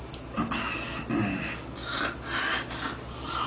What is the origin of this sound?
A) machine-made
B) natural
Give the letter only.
B